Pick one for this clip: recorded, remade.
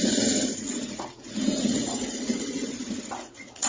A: remade